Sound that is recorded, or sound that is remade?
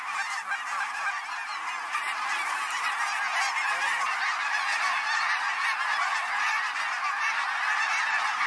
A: recorded